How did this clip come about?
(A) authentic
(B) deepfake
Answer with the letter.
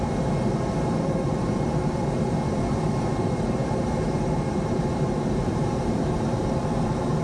B